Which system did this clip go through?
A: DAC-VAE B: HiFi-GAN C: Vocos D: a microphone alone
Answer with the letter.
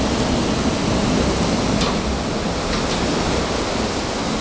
D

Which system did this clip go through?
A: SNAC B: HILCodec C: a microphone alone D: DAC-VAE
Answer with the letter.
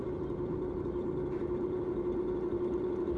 C